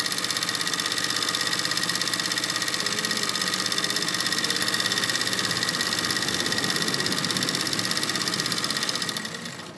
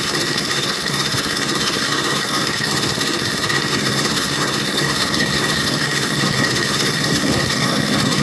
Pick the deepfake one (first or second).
second